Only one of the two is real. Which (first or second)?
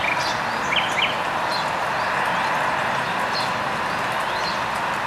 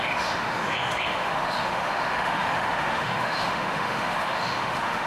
first